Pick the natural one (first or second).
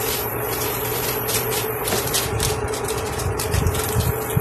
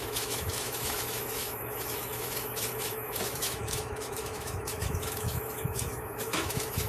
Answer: first